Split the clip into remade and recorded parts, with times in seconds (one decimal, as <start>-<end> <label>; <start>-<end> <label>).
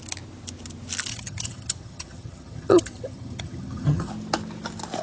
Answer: 0.0-1.1 recorded; 1.1-4.1 remade; 4.1-5.0 recorded